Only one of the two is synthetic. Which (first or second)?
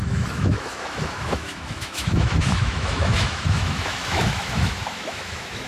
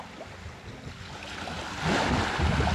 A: first